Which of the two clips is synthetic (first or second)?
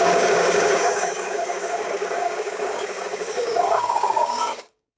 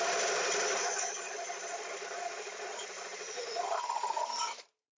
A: first